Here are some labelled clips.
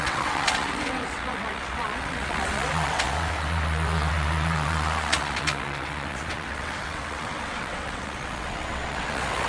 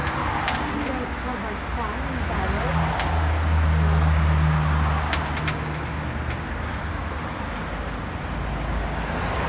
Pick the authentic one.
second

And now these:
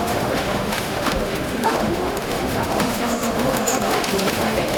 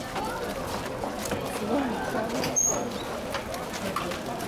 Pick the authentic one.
second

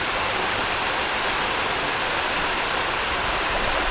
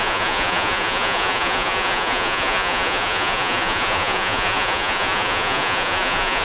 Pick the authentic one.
first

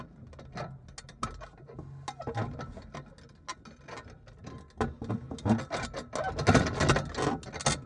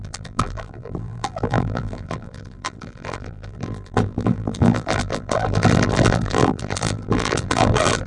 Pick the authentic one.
first